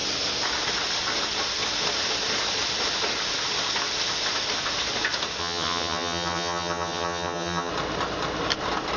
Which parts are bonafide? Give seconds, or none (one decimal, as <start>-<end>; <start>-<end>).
0.0-5.4; 7.7-9.0